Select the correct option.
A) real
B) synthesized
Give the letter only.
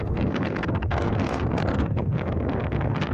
B